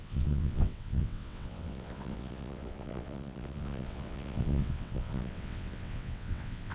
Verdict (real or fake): fake